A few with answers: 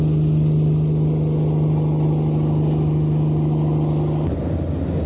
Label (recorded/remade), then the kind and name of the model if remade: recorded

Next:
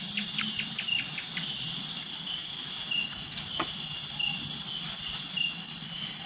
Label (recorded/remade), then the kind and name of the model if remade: recorded